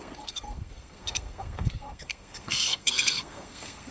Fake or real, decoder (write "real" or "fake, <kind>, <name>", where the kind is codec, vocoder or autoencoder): fake, codec, SNAC